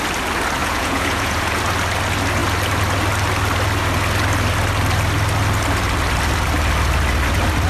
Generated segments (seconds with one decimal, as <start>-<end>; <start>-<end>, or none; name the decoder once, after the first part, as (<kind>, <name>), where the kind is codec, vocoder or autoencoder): 0.6-1.6 (vocoder, Vocos)